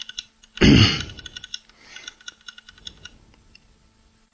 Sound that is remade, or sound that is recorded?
recorded